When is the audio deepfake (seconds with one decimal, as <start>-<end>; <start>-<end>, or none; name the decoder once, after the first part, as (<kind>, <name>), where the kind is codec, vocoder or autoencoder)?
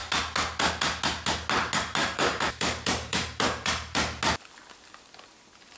2.0-4.2 (vocoder, BigVGAN v2)